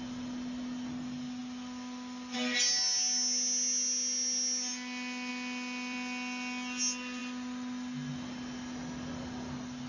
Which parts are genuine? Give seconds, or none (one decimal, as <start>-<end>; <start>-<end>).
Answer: 0.0-9.9